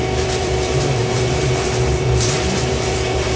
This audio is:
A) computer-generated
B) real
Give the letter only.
A